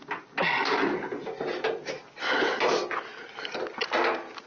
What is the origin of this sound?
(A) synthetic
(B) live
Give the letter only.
B